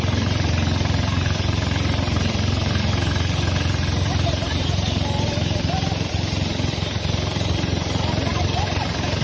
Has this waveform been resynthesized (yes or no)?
yes